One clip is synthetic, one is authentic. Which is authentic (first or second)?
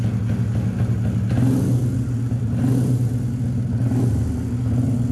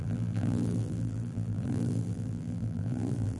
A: first